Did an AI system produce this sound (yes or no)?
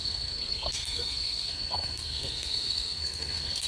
yes